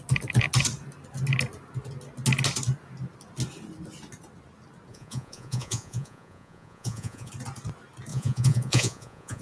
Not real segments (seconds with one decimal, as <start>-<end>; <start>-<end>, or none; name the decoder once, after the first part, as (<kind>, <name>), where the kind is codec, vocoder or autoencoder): 4.9-7.3 (vocoder, Vocos); 8.1-9.4